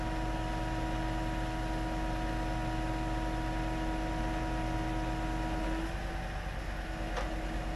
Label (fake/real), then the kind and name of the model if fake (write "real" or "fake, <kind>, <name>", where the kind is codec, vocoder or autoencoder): real